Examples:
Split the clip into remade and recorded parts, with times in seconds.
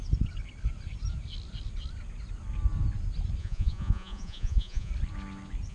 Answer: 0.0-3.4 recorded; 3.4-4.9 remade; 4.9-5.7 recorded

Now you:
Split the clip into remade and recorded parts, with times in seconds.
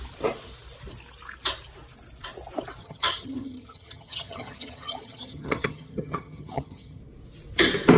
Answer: 0.0-2.8 recorded; 2.8-7.0 remade; 7.0-8.0 recorded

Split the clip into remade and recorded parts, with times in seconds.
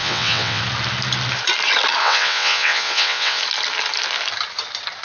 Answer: 0.0-0.6 remade; 0.6-2.0 recorded; 2.0-3.4 remade; 3.4-5.0 recorded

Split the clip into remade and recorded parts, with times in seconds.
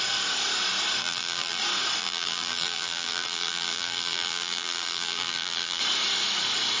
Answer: 0.0-1.0 recorded; 1.0-1.6 remade; 1.6-2.0 recorded; 2.0-5.8 remade; 5.8-6.8 recorded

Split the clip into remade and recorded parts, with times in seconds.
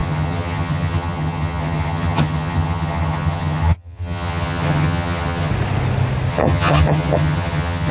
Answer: 0.0-5.5 remade; 5.5-6.3 recorded; 6.3-7.9 remade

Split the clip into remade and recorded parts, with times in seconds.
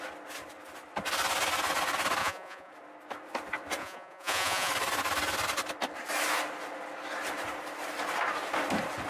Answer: 0.0-2.2 recorded; 2.2-2.7 remade; 2.7-3.8 recorded; 3.8-4.7 remade; 4.7-9.1 recorded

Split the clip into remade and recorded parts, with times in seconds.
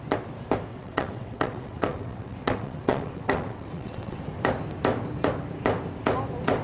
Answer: 0.0-0.7 recorded; 0.7-4.2 remade; 4.2-6.6 recorded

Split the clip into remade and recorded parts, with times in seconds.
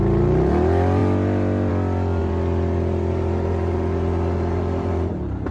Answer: 0.0-2.2 recorded; 2.2-5.5 remade